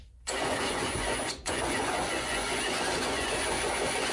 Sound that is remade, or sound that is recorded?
remade